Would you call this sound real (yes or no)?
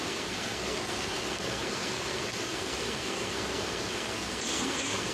no